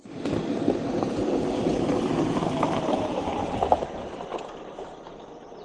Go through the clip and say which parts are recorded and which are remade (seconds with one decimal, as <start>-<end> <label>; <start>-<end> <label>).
0.0-1.2 recorded; 1.2-4.3 remade; 4.3-5.6 recorded